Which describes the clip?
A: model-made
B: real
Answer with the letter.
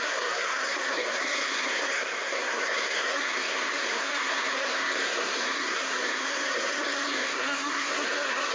A